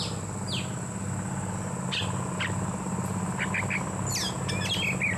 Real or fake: real